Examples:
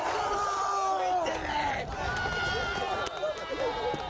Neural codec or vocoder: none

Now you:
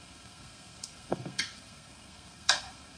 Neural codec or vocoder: codec, SNAC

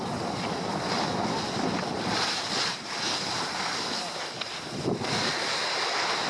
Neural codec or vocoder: none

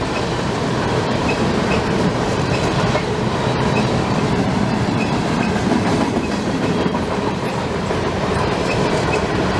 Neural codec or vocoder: vocoder, BigVGAN v2